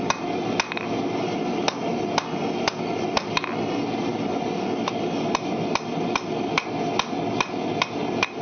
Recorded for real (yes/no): yes